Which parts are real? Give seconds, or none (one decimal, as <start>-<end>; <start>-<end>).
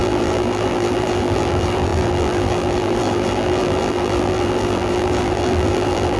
none